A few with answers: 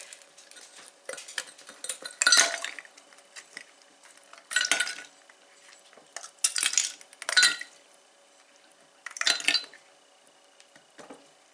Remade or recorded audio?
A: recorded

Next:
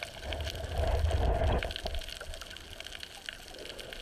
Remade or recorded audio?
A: recorded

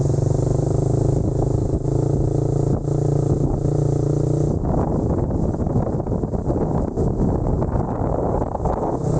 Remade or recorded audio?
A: recorded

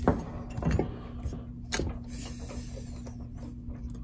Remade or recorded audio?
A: recorded